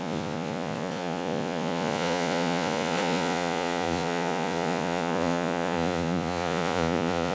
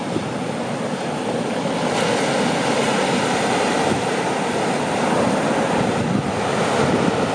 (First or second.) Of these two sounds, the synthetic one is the first